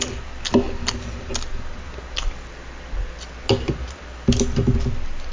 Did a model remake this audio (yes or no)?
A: no